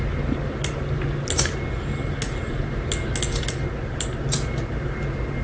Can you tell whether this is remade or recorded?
recorded